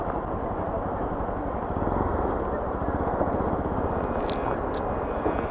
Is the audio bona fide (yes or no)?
yes